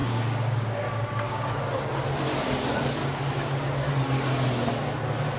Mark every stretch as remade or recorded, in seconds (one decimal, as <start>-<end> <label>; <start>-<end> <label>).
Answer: 0.0-1.5 remade; 1.5-3.0 recorded; 3.0-3.9 remade; 3.9-5.4 recorded

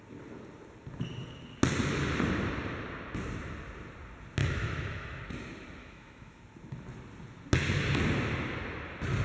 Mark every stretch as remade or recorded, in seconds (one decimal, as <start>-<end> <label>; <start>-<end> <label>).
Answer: 0.0-4.4 recorded; 4.4-5.2 remade; 5.2-5.8 recorded; 5.8-6.4 remade; 6.4-9.2 recorded